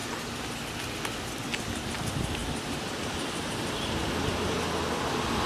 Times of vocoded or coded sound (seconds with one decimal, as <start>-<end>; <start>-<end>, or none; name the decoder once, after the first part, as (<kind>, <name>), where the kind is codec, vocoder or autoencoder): 0.0-0.8 (vocoder, BigVGAN v2); 2.4-4.1